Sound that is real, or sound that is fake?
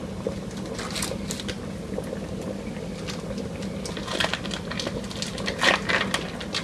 real